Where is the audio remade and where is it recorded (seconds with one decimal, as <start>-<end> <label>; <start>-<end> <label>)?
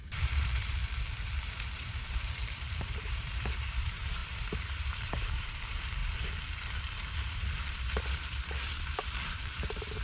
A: 0.0-0.8 remade; 0.8-1.4 recorded; 1.4-6.0 remade; 6.0-6.8 recorded; 6.8-10.0 remade